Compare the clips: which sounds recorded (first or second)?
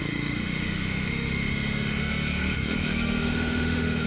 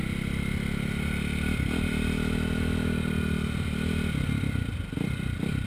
second